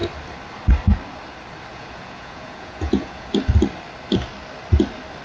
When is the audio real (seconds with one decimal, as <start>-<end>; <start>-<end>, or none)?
0.0-1.7; 3.3-5.2